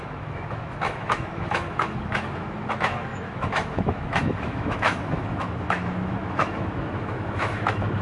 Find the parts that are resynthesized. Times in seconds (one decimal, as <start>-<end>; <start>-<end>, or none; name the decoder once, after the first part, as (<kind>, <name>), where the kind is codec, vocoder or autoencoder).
0.0-8.0 (autoencoder, DAC-VAE)